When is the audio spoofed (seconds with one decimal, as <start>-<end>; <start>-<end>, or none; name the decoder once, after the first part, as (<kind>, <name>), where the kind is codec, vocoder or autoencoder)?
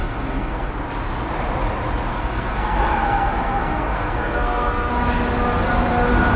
0.0-0.7 (codec, SNAC); 2.1-4.9